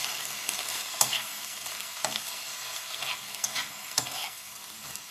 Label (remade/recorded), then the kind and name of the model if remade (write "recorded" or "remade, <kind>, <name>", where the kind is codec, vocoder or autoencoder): remade, codec, SNAC